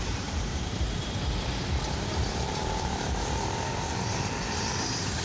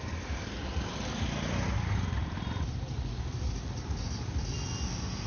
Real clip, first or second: second